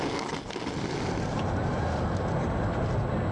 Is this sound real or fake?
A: real